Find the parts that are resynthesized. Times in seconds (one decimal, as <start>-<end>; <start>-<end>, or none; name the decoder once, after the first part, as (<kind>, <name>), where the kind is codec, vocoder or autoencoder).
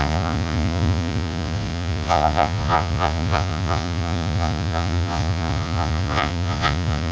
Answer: 0.0-7.1 (vocoder, Vocos)